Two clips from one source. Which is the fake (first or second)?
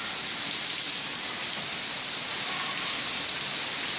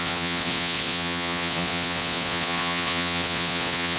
second